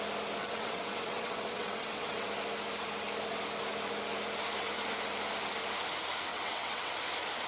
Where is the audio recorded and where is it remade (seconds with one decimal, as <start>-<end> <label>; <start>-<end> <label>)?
0.0-0.4 recorded; 0.4-2.3 remade; 2.3-6.3 recorded; 6.3-6.9 remade; 6.9-7.5 recorded